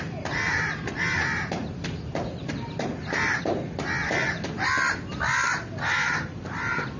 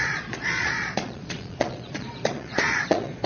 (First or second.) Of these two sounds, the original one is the first